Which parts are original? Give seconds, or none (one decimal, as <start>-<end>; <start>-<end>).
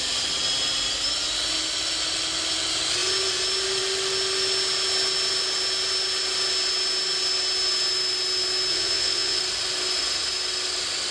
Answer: 0.0-8.7; 9.4-11.1